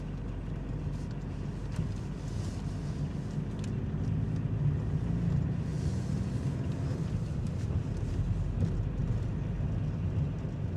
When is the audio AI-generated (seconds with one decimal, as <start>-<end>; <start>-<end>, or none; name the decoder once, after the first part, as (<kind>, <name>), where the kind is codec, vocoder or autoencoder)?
9.0-9.8 (vocoder, BigVGAN v2)